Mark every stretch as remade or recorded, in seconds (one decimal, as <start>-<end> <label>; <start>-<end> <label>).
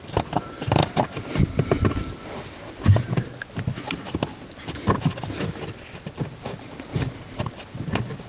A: 0.0-6.9 recorded; 6.9-7.4 remade; 7.4-8.3 recorded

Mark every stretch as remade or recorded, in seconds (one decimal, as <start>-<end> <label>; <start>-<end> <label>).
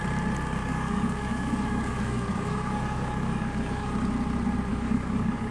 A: 0.0-0.6 recorded; 0.6-3.9 remade; 3.9-4.7 recorded; 4.7-5.5 remade